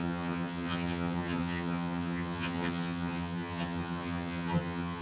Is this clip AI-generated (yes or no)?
yes